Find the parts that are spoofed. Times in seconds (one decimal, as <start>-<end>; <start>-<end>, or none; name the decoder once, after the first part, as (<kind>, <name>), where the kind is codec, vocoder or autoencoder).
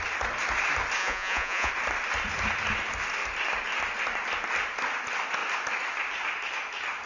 1.0-1.7 (vocoder, Vocos)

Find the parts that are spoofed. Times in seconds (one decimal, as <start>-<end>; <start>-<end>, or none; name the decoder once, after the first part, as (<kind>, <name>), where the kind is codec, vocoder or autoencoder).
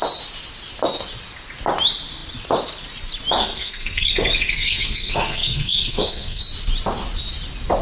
3.4-6.4 (codec, SNAC)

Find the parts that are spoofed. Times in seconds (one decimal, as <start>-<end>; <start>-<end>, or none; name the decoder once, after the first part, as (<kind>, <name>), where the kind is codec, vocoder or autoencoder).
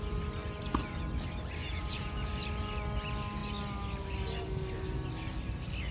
1.6-2.3 (vocoder, Vocos)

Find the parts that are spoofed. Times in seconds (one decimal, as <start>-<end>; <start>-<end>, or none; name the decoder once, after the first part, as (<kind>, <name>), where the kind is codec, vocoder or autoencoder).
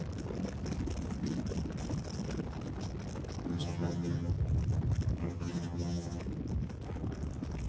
3.5-4.3 (vocoder, HiFi-GAN); 5.2-6.2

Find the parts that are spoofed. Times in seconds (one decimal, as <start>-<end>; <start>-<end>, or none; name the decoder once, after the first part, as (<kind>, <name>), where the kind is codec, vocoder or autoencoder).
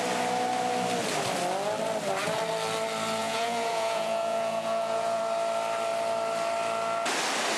3.2-5.2 (vocoder, Vocos)